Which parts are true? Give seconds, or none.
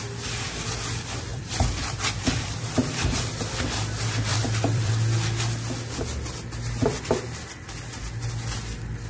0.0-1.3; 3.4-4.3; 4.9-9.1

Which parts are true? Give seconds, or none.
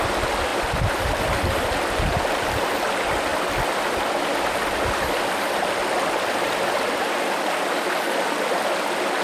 0.0-9.2